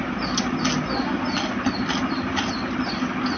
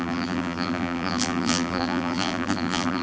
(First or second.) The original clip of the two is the first